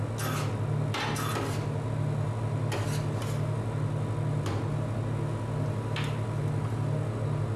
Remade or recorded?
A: recorded